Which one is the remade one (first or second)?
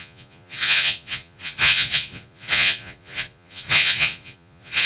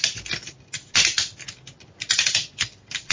first